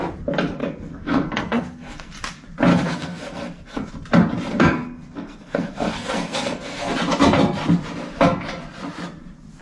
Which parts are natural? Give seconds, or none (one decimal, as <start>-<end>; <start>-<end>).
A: 0.0-0.6; 2.1-2.7; 3.9-4.5; 6.9-9.6